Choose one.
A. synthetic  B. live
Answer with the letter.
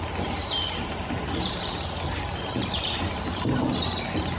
B